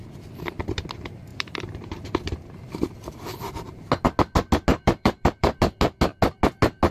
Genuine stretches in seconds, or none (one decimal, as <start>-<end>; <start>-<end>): 0.0-1.3; 3.9-4.7; 5.6-6.9